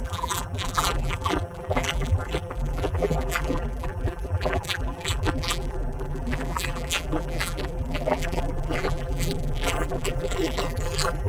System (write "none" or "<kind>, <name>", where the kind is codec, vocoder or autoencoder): vocoder, BigVGAN v2